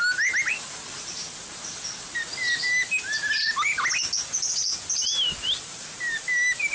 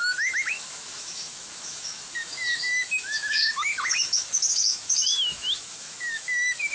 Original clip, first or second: first